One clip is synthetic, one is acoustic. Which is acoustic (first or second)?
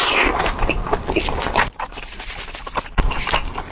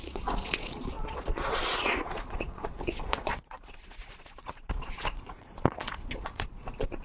first